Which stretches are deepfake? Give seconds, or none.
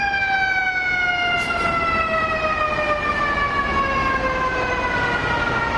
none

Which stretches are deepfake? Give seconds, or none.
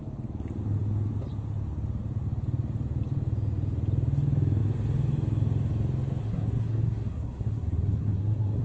6.2-8.6 (codec, SNAC)